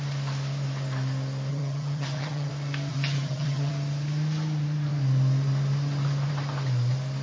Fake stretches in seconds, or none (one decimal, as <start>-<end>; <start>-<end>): 1.5-2.5; 2.9-3.7